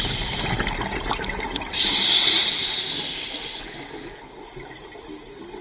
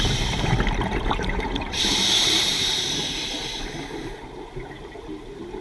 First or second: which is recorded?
first